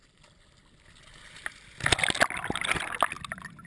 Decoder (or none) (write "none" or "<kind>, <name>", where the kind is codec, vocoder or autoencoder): none